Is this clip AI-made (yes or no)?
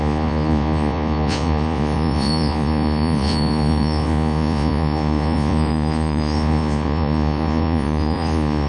yes